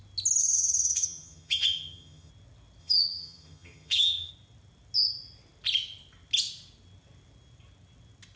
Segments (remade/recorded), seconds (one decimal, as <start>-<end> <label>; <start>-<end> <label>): 0.0-0.4 recorded; 0.4-2.3 remade; 2.3-2.8 recorded; 2.8-4.3 remade; 4.3-8.4 recorded